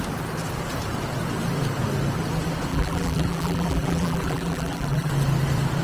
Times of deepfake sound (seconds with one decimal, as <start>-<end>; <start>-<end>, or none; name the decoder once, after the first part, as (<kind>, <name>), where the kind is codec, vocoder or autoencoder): 2.7-5.1 (vocoder, BigVGAN v2)